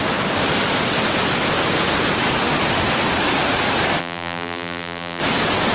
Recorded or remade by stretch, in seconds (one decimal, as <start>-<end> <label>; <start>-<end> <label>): 0.0-4.0 recorded; 4.0-5.2 remade; 5.2-5.7 recorded